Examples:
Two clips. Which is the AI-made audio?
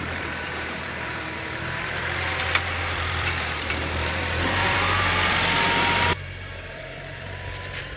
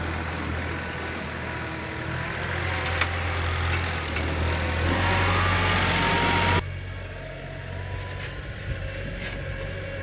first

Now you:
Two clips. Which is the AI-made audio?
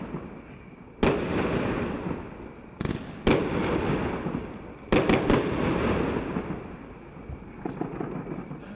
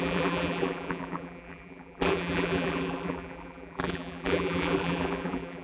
second